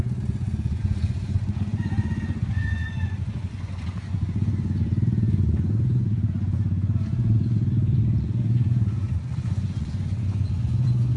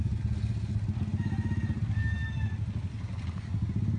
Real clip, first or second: second